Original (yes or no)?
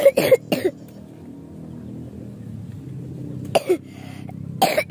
yes